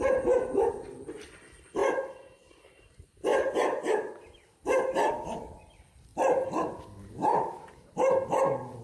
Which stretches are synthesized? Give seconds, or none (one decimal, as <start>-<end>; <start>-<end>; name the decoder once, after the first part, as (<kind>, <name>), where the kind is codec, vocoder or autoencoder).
3.3-5.1 (vocoder, BigVGAN v2); 6.1-6.8; 7.2-8.1